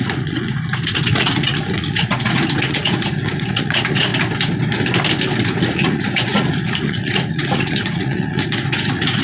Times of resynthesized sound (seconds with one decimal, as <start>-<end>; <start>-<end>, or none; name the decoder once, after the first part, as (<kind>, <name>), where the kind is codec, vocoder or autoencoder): 0.0-4.1 (vocoder, Vocos); 5.6-9.2